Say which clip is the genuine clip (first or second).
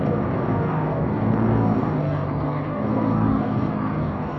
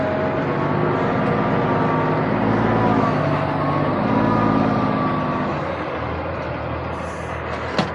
second